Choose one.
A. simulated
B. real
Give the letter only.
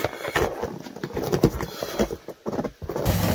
B